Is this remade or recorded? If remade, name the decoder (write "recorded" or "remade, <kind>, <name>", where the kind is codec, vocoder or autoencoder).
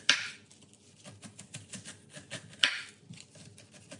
recorded